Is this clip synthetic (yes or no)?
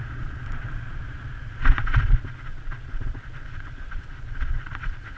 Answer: yes